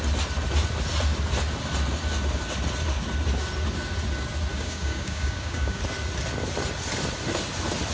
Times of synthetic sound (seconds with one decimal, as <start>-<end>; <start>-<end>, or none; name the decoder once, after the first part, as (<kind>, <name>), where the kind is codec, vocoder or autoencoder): 4.5-5.8 (codec, DAC)